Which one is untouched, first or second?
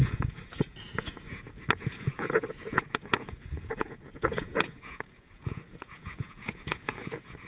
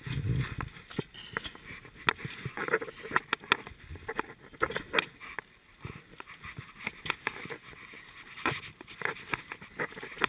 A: second